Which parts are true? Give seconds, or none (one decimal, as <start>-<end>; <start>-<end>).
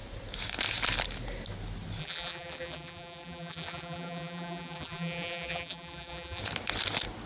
0.0-2.0; 6.4-7.3